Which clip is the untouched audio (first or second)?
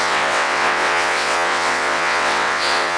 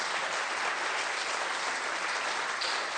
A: second